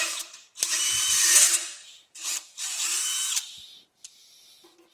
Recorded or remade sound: remade